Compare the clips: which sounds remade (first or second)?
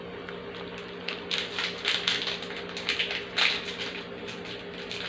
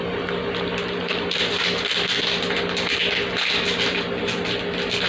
second